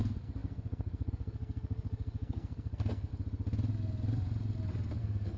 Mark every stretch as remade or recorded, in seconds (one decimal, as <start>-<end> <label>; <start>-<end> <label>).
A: 0.0-3.1 remade; 3.1-5.0 recorded; 5.0-5.4 remade

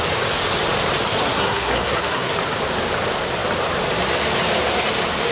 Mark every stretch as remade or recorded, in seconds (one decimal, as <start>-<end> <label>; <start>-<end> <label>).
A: 0.0-1.2 recorded; 1.2-2.3 remade; 2.3-5.3 recorded

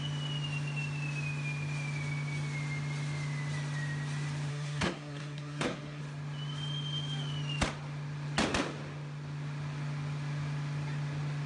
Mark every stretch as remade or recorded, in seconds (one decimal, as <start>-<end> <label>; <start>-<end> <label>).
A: 0.0-4.5 recorded; 4.5-6.0 remade; 6.0-11.5 recorded

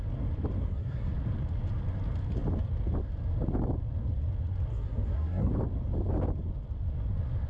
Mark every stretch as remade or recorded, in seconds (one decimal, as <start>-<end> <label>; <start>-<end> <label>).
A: 0.0-0.6 recorded; 0.6-1.1 remade; 1.1-4.7 recorded; 4.7-5.5 remade; 5.5-7.5 recorded

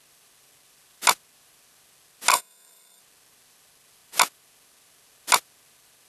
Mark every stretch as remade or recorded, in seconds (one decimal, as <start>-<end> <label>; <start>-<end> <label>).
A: 0.0-2.3 recorded; 2.3-3.0 remade; 3.0-6.1 recorded

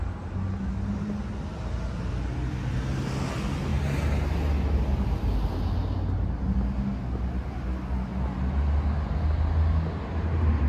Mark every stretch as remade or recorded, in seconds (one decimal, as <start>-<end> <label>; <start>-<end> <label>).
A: 0.0-10.7 recorded

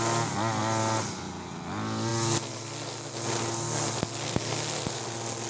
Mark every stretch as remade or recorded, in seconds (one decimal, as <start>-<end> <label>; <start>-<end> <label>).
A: 0.0-5.5 recorded

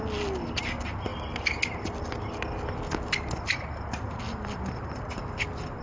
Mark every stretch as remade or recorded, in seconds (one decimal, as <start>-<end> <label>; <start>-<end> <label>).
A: 0.0-5.8 recorded